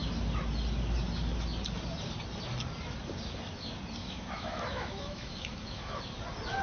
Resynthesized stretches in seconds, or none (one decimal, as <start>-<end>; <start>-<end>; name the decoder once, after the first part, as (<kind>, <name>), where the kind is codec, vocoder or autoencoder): 4.0-6.0 (autoencoder, DAC-VAE)